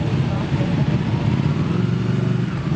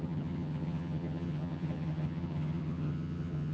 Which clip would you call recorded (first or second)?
first